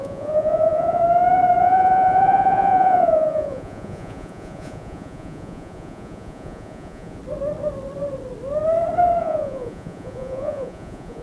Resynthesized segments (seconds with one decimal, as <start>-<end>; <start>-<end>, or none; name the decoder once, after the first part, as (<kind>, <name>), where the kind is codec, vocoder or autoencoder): 0.0-1.0 (vocoder, Vocos); 1.6-7.2; 9.2-11.2